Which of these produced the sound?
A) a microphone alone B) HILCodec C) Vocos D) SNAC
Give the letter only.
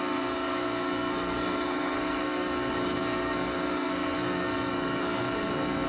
D